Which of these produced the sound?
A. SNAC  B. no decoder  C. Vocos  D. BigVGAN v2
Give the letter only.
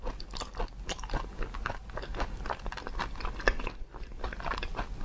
B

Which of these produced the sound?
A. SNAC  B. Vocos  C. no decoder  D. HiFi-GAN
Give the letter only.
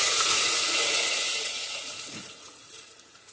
B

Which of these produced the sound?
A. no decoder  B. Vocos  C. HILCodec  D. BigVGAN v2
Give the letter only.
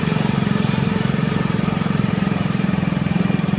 D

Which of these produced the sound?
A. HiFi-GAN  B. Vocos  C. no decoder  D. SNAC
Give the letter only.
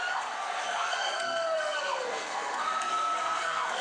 D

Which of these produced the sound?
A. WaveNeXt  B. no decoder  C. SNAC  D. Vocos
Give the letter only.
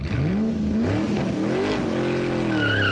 B